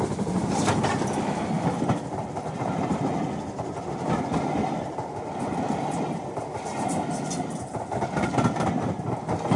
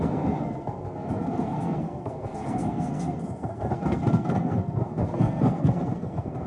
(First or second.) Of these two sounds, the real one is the first